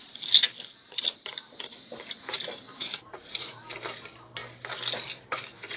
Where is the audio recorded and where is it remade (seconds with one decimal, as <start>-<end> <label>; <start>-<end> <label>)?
0.0-2.7 recorded; 2.7-3.6 remade; 3.6-5.8 recorded